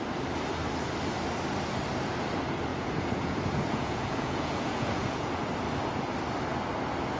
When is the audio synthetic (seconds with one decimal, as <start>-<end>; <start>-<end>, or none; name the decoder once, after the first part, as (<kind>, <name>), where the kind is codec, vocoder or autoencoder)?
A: 2.7-5.4 (vocoder, Vocos)